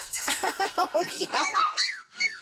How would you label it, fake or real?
fake